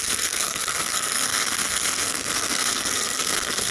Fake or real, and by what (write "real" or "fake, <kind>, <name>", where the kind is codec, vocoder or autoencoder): fake, codec, SNAC